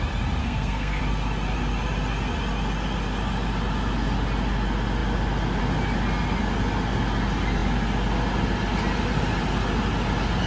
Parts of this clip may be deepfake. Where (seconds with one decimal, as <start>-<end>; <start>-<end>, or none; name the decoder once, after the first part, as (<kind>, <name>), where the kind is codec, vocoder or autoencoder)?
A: 0.4-1.0 (codec, SNAC)